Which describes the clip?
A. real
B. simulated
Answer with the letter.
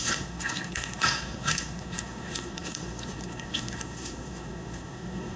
B